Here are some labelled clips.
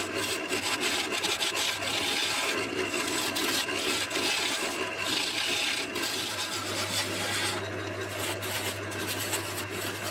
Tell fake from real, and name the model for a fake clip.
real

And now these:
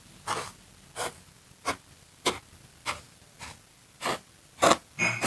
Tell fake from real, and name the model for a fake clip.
real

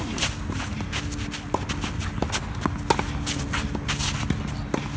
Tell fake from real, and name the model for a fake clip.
real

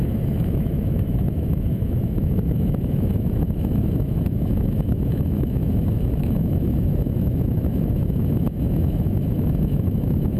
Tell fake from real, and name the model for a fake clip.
fake, autoencoder, DAC-VAE